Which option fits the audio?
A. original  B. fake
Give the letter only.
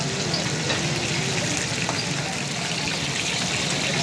A